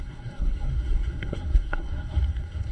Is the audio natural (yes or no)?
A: no